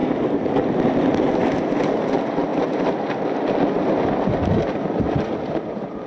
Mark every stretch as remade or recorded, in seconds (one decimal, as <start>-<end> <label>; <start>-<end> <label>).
0.0-6.1 recorded